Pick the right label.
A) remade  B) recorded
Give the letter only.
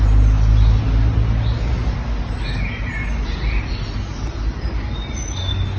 B